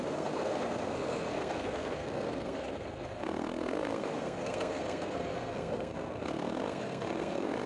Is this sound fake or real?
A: fake